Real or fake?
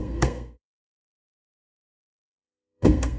fake